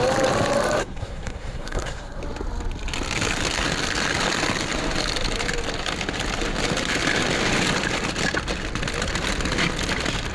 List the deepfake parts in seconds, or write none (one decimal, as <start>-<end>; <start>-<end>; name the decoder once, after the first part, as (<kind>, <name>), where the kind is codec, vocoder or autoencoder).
0.8-2.2 (codec, SNAC)